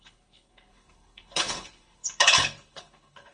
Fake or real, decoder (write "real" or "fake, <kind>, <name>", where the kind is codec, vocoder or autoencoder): fake, codec, HILCodec